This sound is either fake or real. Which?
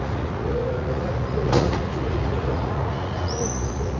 fake